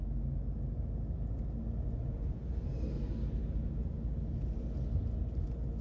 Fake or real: real